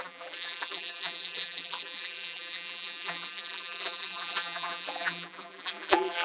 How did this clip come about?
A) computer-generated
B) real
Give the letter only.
A